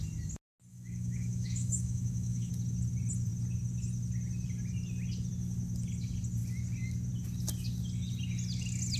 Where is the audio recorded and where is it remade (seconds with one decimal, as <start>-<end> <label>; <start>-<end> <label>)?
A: 0.0-0.7 recorded; 0.7-2.5 remade; 2.5-9.0 recorded